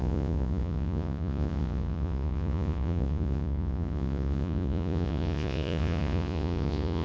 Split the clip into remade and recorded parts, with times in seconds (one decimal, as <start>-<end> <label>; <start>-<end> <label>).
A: 0.0-7.0 remade